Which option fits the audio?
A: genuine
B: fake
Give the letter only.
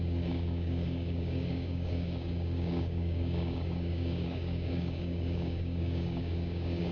B